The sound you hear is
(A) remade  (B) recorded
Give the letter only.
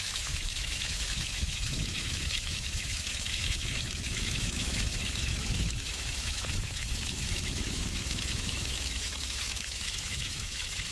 A